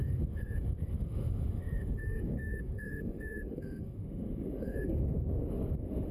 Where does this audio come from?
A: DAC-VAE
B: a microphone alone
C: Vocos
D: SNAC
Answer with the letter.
A